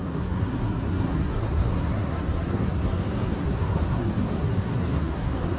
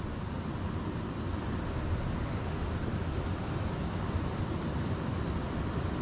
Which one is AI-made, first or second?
first